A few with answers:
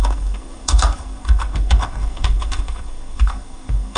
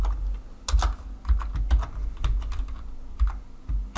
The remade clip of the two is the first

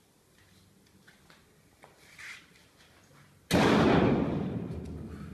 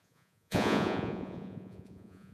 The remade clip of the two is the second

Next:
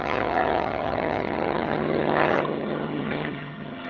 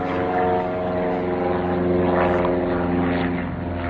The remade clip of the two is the first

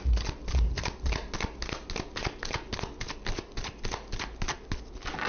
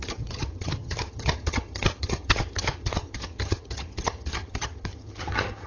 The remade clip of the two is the second